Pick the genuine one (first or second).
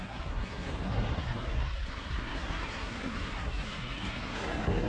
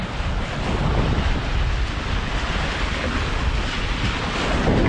second